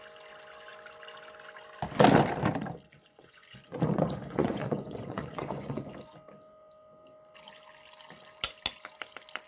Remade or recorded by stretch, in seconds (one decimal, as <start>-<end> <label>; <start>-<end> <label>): 0.0-2.9 recorded; 2.9-5.9 remade; 5.9-9.5 recorded